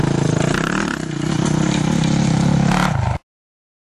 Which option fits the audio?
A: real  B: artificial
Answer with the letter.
A